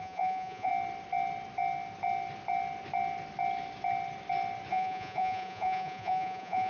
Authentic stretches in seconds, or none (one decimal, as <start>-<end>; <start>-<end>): 0.7-4.7